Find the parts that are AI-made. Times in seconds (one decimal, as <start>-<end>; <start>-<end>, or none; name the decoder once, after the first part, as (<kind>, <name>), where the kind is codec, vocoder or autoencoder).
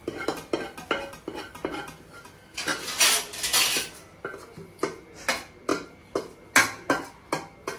none